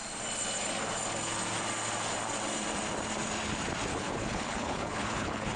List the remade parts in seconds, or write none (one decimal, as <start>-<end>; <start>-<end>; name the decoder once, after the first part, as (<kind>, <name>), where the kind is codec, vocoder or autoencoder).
3.9-5.6 (codec, HILCodec)